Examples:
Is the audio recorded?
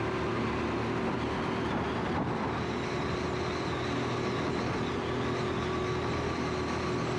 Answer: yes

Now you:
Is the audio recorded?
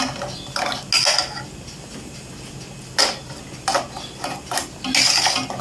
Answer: yes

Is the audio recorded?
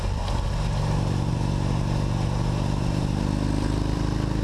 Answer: yes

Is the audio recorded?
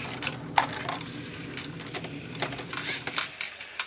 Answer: yes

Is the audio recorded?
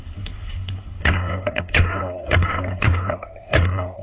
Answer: no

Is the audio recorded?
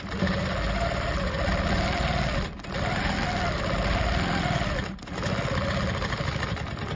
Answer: yes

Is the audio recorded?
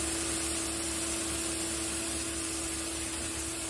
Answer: yes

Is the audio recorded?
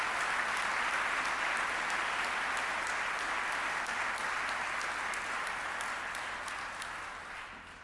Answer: yes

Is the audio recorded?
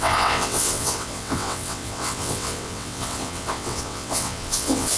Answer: no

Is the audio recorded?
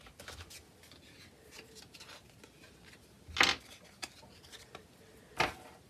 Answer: yes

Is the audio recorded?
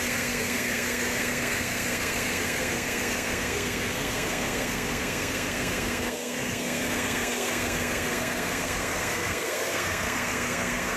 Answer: no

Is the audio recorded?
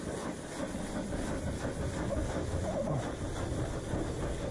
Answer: yes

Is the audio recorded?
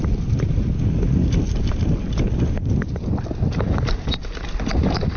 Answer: yes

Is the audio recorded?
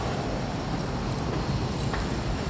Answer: no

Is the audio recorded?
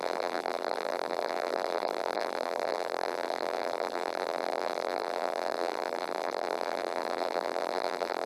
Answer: no